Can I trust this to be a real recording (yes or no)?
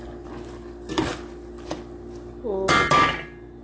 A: yes